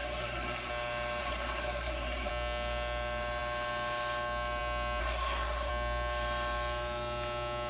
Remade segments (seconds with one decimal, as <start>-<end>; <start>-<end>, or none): 0.0-0.7; 1.2-2.3; 5.0-5.7